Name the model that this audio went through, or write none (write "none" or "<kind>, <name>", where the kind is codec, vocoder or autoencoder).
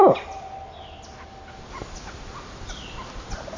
none